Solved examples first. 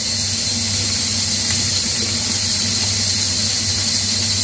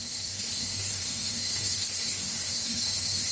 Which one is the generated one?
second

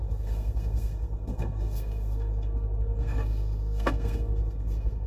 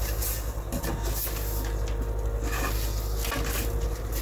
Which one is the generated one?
first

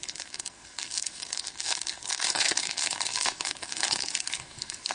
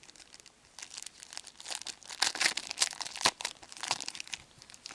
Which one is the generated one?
first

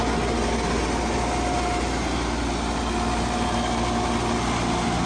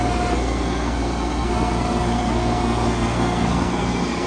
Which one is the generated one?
second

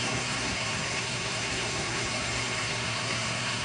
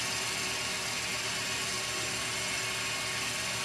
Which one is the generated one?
first